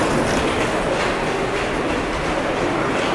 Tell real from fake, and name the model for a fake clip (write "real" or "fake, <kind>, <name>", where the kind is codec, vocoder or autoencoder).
real